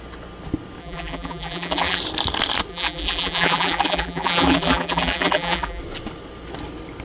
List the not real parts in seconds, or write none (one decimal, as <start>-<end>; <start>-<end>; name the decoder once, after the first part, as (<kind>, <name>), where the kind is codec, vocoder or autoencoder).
0.8-2.0 (vocoder, BigVGAN v2); 2.7-5.8